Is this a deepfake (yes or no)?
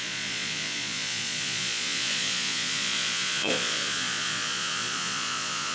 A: yes